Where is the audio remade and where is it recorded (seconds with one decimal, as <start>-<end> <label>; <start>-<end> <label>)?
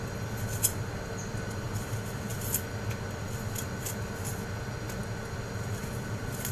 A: 0.0-6.5 recorded